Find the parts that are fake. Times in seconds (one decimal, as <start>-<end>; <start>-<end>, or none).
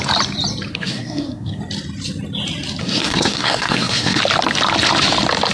0.7-1.6; 2.8-4.2